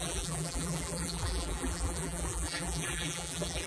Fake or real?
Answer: fake